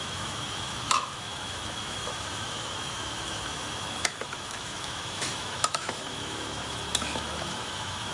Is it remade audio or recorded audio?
remade